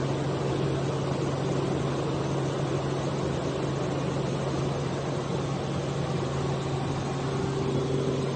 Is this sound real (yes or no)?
yes